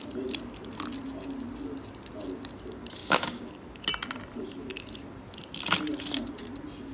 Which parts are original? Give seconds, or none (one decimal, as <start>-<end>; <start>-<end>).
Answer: 0.0-3.0; 3.5-6.9